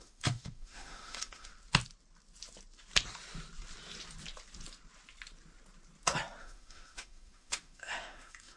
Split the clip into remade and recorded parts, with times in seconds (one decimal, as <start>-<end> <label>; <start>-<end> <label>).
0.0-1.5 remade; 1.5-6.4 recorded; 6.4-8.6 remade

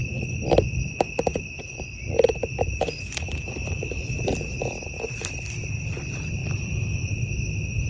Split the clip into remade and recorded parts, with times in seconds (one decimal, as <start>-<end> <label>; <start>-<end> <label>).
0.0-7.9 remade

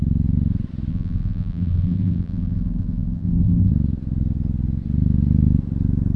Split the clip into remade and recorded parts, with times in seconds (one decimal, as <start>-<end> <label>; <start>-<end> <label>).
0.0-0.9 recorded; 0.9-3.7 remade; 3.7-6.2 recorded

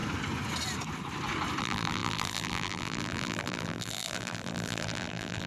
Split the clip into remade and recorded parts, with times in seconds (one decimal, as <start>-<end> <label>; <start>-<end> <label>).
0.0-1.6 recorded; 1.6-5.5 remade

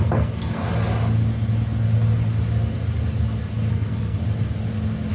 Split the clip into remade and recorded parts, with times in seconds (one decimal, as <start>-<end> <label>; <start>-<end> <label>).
0.0-0.6 remade; 0.6-3.7 recorded; 3.7-4.2 remade; 4.2-5.1 recorded